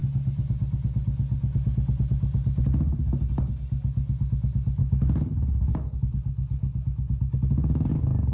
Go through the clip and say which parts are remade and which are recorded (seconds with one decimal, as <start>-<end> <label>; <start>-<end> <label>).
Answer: 0.0-4.8 recorded; 4.8-7.9 remade; 7.9-8.3 recorded